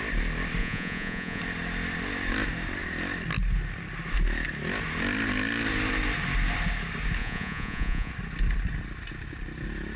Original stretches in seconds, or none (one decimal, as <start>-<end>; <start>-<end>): 0.0-0.6; 1.4-7.2; 8.1-10.0